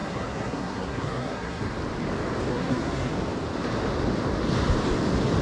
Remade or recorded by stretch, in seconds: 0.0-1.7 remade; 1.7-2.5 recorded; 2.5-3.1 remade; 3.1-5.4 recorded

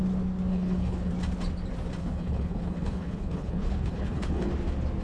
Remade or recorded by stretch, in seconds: 0.0-0.5 recorded; 0.5-1.1 remade; 1.1-2.0 recorded; 2.0-4.5 remade; 4.5-5.0 recorded

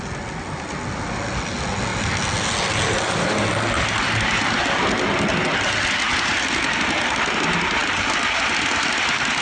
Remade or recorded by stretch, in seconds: 0.0-9.4 recorded

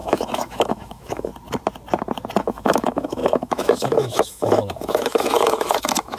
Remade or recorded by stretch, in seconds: 0.0-1.3 remade; 1.3-2.4 recorded; 2.4-6.2 remade

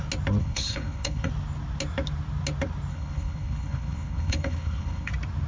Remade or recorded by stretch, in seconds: 0.0-0.4 recorded; 0.4-1.3 remade; 1.3-2.9 recorded; 2.9-5.1 remade; 5.1-5.5 recorded

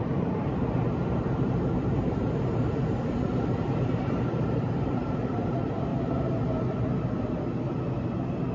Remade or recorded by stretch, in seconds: 0.0-5.9 remade; 5.9-8.5 recorded